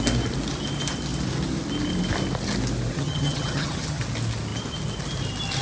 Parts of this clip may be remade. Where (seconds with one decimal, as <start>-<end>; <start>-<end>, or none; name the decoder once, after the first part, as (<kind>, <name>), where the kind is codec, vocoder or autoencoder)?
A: 2.9-4.0 (vocoder, HiFi-GAN)

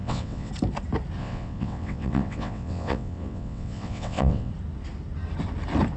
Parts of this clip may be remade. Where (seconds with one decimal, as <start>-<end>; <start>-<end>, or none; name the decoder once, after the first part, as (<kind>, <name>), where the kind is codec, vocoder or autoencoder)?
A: 0.0-0.5 (vocoder, WaveNeXt); 1.2-4.5

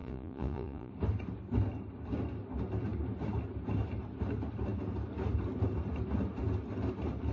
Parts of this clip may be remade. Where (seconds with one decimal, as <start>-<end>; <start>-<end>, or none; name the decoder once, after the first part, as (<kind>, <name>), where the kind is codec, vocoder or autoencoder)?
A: 0.0-0.9 (vocoder, Vocos)

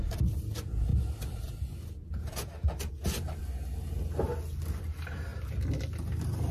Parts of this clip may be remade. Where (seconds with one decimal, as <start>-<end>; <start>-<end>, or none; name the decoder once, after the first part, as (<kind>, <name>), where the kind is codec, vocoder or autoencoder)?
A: none

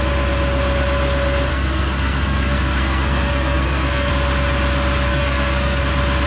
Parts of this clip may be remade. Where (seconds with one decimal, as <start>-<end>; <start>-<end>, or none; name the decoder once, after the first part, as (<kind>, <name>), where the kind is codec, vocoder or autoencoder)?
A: 1.5-4.1 (codec, SNAC); 5.1-5.8